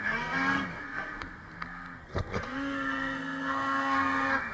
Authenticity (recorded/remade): remade